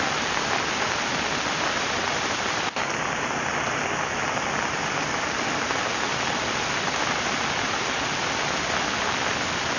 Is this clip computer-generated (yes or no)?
no